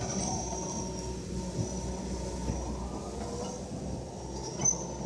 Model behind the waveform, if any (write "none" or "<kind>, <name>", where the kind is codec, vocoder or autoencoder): none